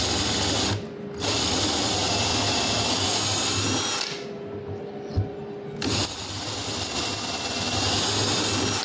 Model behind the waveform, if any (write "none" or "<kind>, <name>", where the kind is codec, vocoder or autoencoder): none